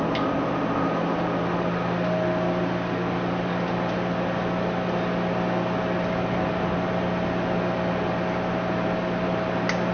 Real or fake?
real